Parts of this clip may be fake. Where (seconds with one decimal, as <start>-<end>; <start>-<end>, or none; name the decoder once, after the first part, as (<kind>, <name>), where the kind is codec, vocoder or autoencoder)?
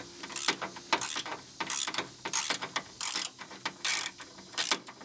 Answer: none